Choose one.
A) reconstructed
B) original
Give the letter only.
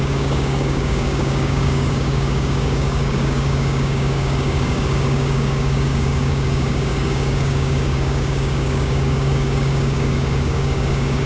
A